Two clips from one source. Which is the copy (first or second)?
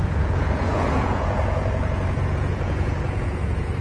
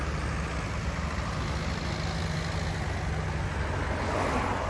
first